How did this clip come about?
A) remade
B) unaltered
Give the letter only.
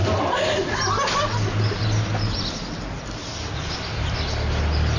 B